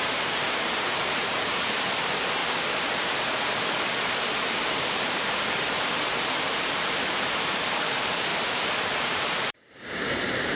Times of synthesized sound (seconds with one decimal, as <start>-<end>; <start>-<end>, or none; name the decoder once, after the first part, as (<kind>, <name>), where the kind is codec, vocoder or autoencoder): 0.0-2.4 (vocoder, BigVGAN v2); 3.6-8.3; 8.8-10.6